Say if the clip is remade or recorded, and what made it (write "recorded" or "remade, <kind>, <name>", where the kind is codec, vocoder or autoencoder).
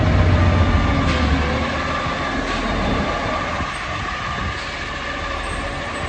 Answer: recorded